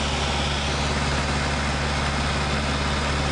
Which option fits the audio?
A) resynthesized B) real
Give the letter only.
B